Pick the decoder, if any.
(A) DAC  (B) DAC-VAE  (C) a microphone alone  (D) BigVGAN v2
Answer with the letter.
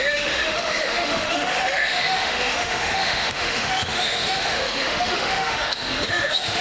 B